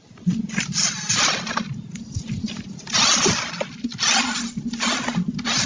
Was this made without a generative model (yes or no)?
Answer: yes